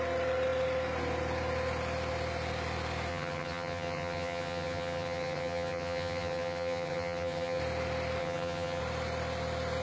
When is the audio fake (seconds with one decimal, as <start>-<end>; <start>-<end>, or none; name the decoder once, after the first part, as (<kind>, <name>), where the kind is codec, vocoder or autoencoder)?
3.1-7.6 (vocoder, HiFi-GAN); 8.2-8.8